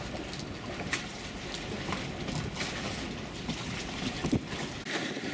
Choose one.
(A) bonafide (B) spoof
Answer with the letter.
A